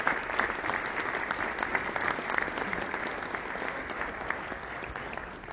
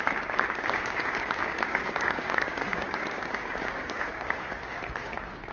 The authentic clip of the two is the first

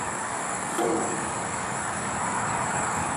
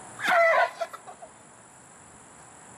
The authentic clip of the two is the second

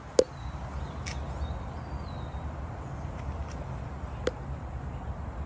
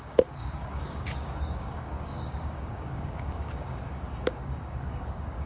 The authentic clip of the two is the first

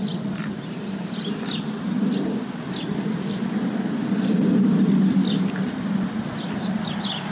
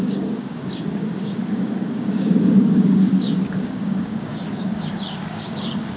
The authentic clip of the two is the first